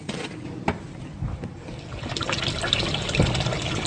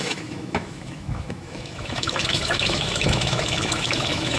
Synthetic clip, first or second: second